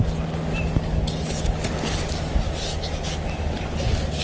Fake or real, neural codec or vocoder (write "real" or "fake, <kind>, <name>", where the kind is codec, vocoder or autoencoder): real